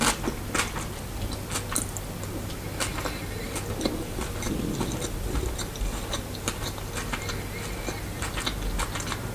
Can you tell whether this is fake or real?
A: real